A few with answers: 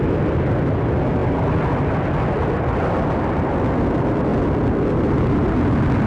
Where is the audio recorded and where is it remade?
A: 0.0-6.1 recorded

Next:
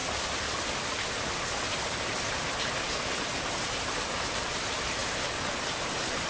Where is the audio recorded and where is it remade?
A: 0.0-6.3 recorded